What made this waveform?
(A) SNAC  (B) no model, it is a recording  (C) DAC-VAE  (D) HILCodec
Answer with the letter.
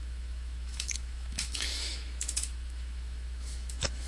C